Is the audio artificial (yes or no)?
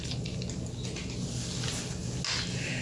no